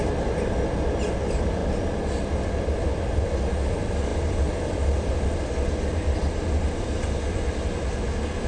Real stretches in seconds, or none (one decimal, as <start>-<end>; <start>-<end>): 0.0-8.5